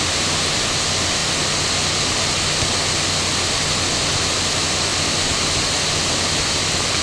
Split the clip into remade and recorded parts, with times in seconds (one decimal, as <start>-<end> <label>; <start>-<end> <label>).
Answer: 0.0-7.0 recorded